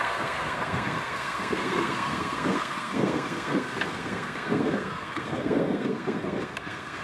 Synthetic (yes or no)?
yes